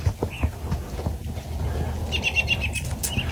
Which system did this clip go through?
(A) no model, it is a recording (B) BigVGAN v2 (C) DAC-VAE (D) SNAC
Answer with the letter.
A